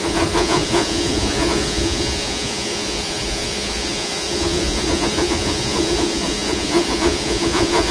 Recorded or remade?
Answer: remade